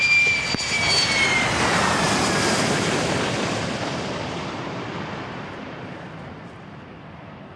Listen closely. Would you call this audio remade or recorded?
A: remade